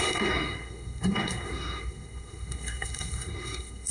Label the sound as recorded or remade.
remade